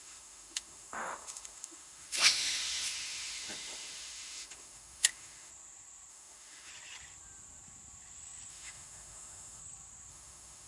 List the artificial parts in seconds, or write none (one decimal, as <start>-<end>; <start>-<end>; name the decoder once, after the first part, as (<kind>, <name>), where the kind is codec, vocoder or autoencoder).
0.0-5.5 (autoencoder, DAC-VAE); 6.1-6.7; 8.5-9.6; 10.1-10.7